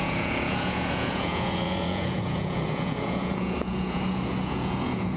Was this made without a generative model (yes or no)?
no